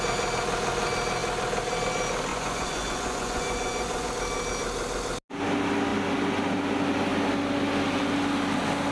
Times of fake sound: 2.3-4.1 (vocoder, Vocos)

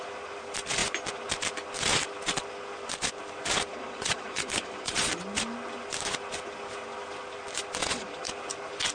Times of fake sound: 3.7-5.1 (vocoder, Vocos); 7.8-8.3